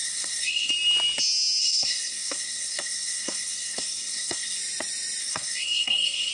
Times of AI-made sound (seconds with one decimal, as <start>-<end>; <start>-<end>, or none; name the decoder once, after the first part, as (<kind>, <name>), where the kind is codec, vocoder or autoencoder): 0.0-0.7 (codec, SNAC); 1.6-4.6; 5.2-6.3